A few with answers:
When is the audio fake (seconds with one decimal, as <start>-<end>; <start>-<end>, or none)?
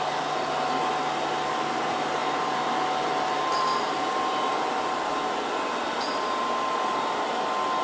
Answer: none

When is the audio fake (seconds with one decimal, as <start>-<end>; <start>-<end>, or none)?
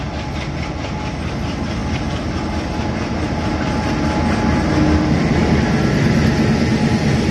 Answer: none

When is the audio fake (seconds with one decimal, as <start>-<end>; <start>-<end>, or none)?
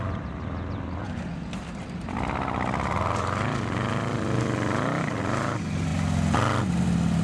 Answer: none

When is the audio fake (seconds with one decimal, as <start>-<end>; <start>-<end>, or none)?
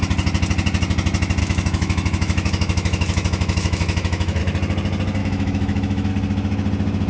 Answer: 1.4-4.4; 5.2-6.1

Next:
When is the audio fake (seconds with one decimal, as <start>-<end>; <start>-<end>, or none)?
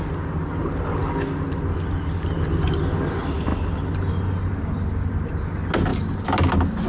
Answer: none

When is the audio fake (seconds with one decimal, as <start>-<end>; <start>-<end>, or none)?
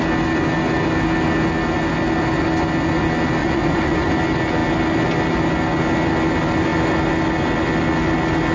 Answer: 3.4-4.1